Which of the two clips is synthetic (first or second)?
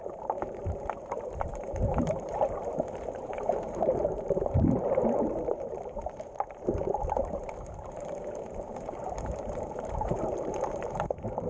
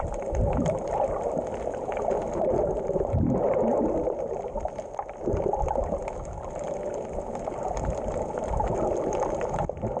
first